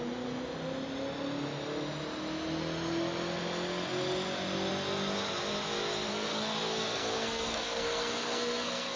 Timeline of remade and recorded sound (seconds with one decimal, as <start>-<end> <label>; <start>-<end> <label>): 0.0-6.1 recorded; 6.1-9.0 remade